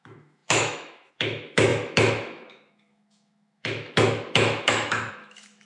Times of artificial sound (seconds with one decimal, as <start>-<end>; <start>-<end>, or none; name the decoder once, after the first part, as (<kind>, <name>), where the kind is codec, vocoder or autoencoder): 0.0-5.7 (autoencoder, DAC-VAE)